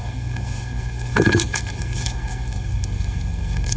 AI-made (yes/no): yes